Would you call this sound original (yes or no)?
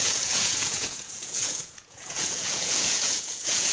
no